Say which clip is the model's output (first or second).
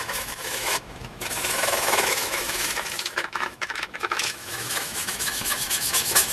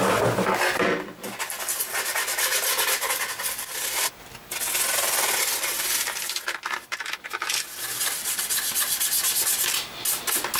first